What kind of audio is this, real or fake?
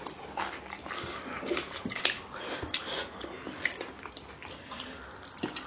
real